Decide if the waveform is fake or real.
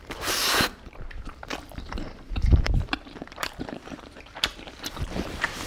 fake